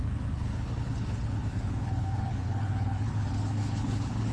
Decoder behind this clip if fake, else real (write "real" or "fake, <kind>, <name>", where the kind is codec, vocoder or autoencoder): fake, codec, HILCodec